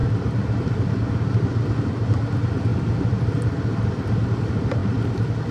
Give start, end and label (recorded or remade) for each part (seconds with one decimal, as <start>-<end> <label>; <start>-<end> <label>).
0.0-2.7 recorded; 2.7-3.2 remade; 3.2-5.5 recorded